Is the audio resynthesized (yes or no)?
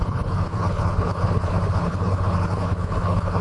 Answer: yes